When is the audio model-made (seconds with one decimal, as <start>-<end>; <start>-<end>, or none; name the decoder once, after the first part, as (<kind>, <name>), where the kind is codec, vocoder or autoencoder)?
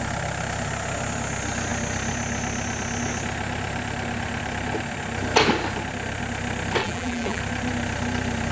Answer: 6.8-7.4 (vocoder, BigVGAN v2)